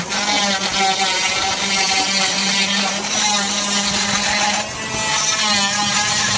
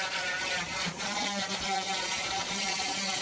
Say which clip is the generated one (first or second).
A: second